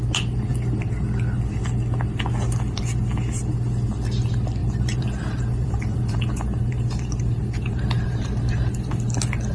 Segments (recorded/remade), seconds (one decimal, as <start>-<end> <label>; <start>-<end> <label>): 0.0-4.6 recorded; 4.6-8.9 remade; 8.9-9.5 recorded